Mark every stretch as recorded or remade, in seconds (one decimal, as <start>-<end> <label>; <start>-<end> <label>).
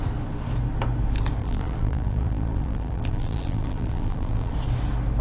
0.0-1.4 recorded; 1.4-4.5 remade; 4.5-5.2 recorded